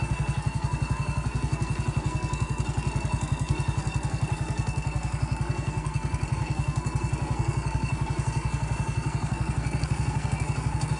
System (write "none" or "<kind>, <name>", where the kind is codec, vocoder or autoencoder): codec, SNAC